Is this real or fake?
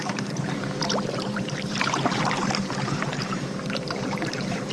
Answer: fake